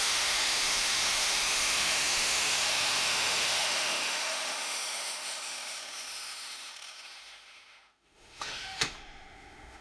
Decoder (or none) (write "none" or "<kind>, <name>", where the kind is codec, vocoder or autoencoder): autoencoder, DAC-VAE